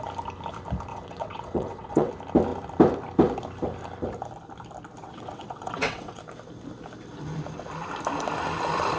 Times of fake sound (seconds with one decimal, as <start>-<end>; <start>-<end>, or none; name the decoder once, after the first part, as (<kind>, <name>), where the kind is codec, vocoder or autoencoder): 0.9-2.1 (vocoder, WaveNeXt); 5.0-6.2